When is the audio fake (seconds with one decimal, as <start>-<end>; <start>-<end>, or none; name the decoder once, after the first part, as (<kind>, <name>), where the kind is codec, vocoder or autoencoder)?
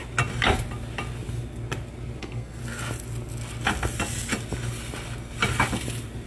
2.2-2.6 (codec, SNAC)